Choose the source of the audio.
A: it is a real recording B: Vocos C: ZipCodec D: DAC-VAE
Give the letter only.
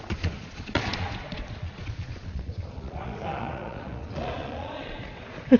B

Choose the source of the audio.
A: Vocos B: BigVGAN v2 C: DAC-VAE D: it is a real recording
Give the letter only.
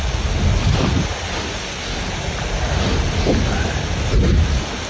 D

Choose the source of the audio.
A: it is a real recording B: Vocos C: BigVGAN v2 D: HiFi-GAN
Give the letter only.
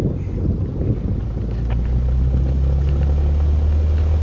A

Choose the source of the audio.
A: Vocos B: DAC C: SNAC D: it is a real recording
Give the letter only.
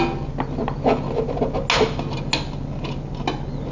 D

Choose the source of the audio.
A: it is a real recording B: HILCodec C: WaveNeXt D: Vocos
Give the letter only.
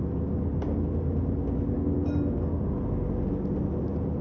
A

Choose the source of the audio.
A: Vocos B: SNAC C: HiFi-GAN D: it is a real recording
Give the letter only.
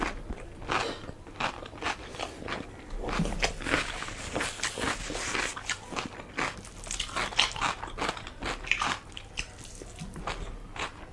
D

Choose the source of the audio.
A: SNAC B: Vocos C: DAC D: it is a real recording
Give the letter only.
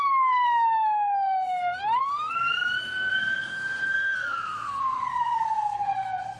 A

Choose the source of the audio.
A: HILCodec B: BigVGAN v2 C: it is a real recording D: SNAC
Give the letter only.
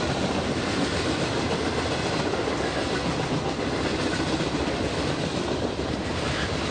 C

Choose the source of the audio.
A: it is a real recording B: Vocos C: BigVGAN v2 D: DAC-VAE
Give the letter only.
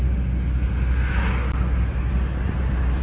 A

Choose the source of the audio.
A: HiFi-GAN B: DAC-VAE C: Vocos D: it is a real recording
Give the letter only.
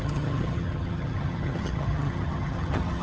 A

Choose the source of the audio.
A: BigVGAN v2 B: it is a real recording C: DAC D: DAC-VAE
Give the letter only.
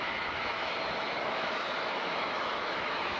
D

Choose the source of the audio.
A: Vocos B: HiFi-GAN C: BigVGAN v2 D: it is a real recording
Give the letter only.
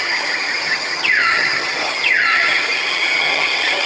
B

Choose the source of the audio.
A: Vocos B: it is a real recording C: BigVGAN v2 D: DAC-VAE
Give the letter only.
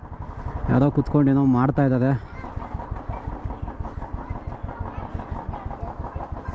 B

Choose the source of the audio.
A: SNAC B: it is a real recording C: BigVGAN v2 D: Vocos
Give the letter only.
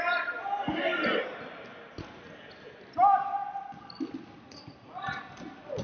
B